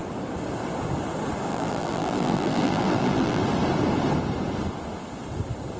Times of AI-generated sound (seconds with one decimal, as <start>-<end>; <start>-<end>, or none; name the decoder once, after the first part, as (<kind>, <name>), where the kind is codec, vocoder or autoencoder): 1.5-3.4 (vocoder, BigVGAN v2)